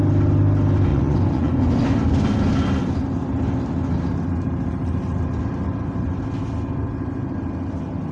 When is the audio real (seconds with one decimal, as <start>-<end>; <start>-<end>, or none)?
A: 0.0-0.9; 1.5-8.1